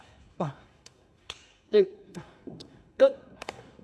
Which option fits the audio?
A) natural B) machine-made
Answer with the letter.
B